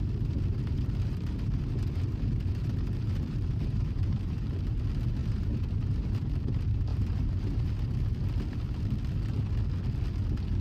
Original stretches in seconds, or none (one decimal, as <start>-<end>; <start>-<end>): 0.0-0.5; 4.5-5.2; 6.3-6.9; 7.7-10.6